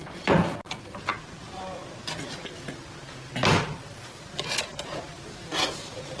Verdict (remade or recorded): recorded